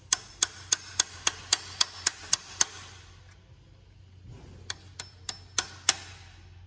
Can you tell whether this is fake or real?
real